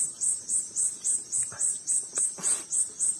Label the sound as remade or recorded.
remade